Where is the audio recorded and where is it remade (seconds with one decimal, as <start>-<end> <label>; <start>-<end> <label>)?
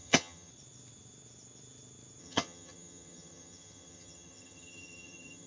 0.0-0.5 remade; 0.5-2.2 recorded; 2.2-5.5 remade